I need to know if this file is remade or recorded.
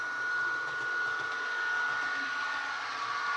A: recorded